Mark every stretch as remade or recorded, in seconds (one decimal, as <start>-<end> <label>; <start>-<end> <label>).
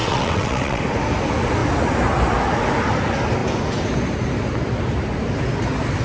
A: 0.0-0.8 remade; 0.8-6.0 recorded